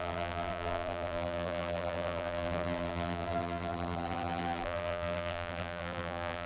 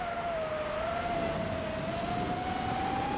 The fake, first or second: first